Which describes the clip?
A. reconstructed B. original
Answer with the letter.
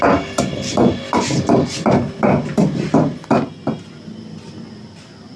B